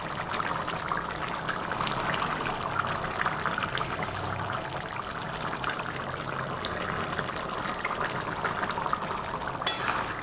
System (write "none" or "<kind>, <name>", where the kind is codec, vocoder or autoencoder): none